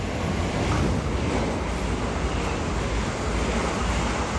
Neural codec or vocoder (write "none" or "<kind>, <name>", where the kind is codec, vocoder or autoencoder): none